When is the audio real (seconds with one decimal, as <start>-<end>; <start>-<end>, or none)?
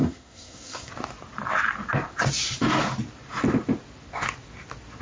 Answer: 0.9-5.0